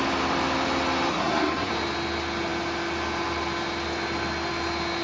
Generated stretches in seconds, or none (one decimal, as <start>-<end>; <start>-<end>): 1.1-1.7